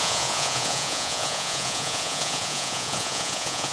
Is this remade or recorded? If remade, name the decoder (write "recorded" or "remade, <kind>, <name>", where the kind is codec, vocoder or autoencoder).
remade, vocoder, Vocos